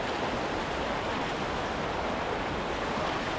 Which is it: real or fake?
real